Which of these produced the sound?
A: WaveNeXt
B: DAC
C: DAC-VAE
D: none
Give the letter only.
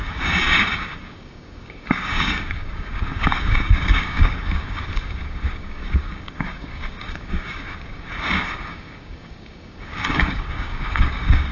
B